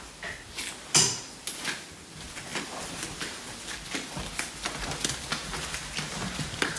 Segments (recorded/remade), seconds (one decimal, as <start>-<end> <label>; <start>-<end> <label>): 0.0-6.8 recorded